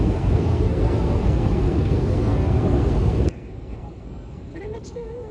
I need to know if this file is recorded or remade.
remade